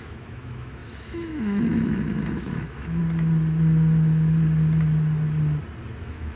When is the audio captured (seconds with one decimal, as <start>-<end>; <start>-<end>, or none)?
3.0-6.0